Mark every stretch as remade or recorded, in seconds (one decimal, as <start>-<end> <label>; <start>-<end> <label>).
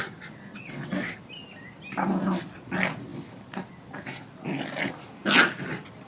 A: 0.0-0.5 recorded; 0.5-1.1 remade; 1.1-6.1 recorded